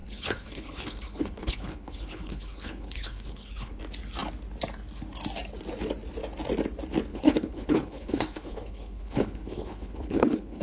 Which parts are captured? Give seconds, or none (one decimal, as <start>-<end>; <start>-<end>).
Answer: 3.8-7.1